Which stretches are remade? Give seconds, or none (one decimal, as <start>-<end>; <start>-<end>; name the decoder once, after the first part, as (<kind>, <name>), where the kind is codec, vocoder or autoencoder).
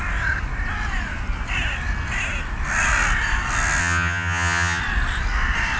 3.8-4.8 (vocoder, HiFi-GAN)